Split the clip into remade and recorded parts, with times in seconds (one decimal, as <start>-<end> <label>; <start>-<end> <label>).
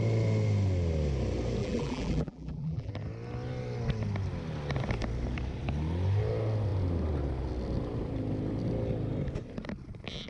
0.0-1.6 recorded; 1.6-2.9 remade; 2.9-10.3 recorded